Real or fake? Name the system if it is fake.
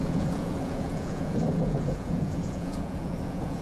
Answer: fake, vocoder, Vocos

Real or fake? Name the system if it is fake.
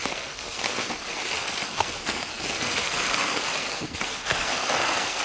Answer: fake, codec, SNAC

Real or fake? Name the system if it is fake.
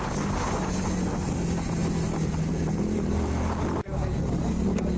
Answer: real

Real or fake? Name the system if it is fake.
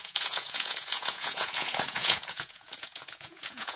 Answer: fake, vocoder, Vocos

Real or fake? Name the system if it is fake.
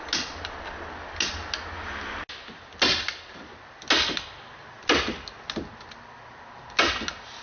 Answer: real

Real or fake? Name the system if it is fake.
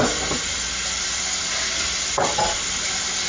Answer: real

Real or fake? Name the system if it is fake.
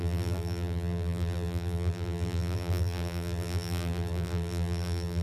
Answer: fake, vocoder, BigVGAN v2